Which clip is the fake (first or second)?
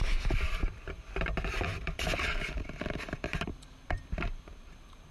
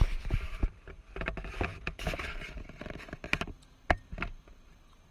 first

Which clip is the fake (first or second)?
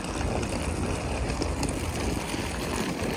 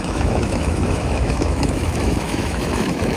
second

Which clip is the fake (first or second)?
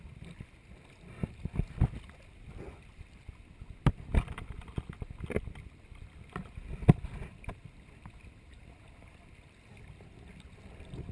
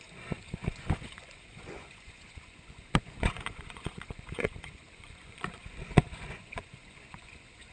second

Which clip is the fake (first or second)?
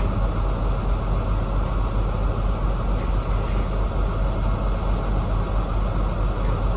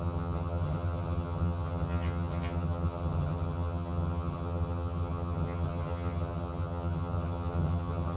second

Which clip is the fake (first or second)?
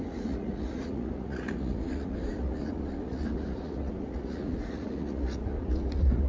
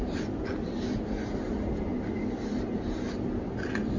first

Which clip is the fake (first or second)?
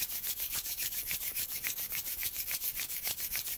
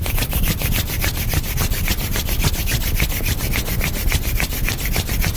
first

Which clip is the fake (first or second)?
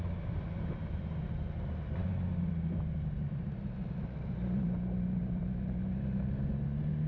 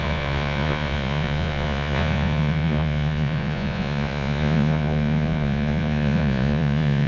second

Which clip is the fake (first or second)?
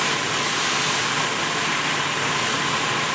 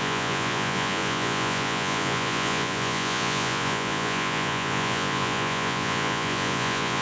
second